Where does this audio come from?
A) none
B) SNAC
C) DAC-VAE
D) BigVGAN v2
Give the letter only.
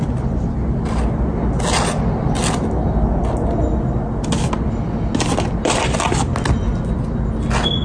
A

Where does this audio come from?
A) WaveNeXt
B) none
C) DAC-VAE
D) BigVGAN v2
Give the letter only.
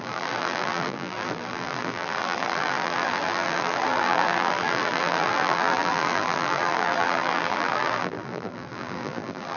D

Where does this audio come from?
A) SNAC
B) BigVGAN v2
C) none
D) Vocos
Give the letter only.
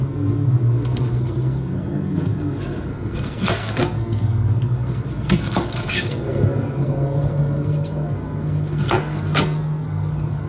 A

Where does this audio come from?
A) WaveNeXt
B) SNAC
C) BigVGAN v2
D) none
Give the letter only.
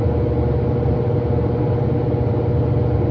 D